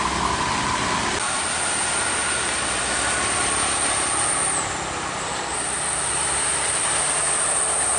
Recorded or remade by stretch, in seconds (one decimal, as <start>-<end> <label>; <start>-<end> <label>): 0.0-8.0 recorded